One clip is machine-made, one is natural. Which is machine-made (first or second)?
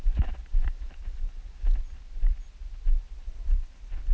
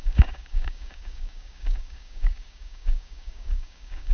second